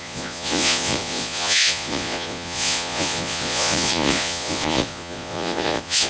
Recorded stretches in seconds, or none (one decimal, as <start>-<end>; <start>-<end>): none